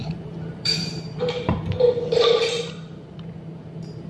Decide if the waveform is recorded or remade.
remade